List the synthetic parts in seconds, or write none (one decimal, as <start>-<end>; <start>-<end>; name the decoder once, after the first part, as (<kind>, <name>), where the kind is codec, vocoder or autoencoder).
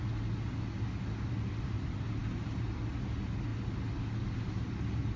none